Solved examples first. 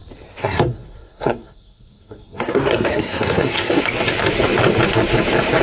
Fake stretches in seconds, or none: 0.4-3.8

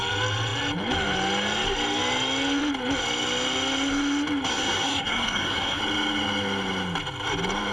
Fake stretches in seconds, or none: 4.5-5.8

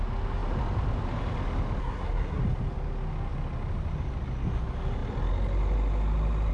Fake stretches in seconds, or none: 1.8-2.4

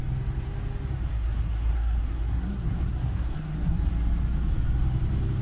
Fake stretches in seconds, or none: 1.1-3.9

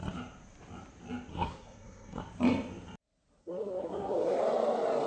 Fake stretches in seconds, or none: 1.3-2.2; 3.4-4.4

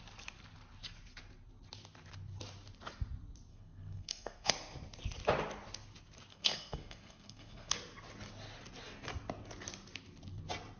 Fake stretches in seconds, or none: 3.5-4.5; 6.3-7.7

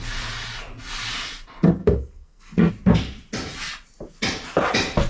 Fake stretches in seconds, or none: 1.8-2.7

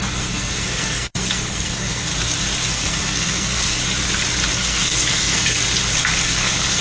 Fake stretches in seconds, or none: 0.0-2.1; 2.7-3.8; 4.5-5.6; 6.2-6.8